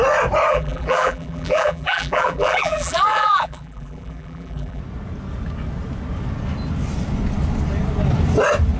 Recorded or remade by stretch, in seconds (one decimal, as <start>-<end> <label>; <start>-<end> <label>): 0.0-0.5 recorded; 0.5-4.8 remade; 4.8-8.8 recorded